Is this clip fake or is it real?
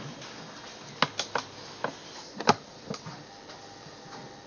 real